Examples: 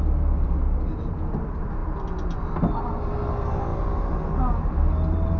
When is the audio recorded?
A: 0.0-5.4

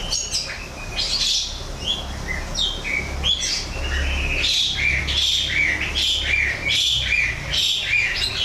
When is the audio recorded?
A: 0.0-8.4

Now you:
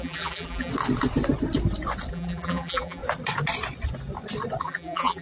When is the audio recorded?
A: 0.7-2.1; 3.0-4.6

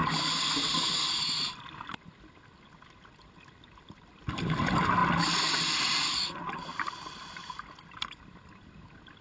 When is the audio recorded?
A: 0.0-9.2